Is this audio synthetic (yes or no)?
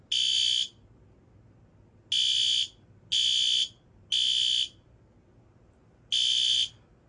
no